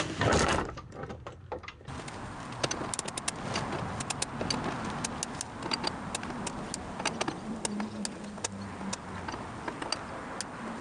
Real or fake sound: real